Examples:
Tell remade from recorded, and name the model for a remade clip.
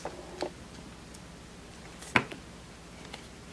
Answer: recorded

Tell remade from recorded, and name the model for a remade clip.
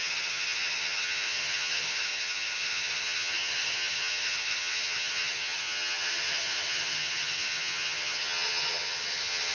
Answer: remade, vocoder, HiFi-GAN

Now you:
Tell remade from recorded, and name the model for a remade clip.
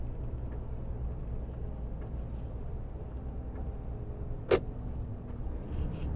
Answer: recorded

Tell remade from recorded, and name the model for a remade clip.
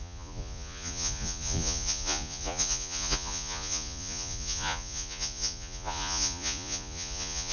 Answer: remade, vocoder, Vocos